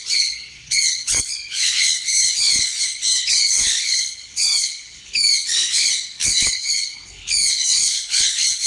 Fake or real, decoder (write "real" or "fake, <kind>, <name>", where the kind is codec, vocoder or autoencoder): fake, codec, HILCodec